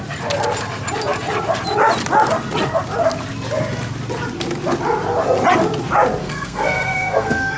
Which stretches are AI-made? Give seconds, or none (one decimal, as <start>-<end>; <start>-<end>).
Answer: 6.2-7.6